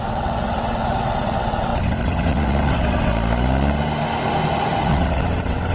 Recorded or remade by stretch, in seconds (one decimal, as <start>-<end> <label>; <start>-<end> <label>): 0.0-3.1 remade; 3.1-4.8 recorded; 4.8-5.7 remade